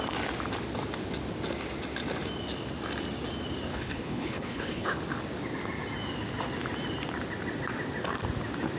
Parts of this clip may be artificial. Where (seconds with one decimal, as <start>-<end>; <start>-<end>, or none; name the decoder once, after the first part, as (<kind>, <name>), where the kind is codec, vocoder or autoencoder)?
3.7-5.0 (codec, HILCodec)